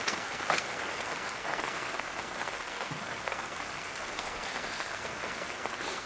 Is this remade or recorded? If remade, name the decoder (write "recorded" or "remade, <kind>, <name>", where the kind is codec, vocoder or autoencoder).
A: remade, codec, SNAC